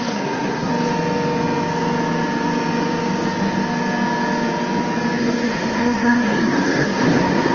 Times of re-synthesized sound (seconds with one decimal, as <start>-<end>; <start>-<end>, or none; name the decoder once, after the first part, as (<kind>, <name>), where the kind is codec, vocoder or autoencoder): 0.0-0.7 (codec, SNAC); 5.2-7.5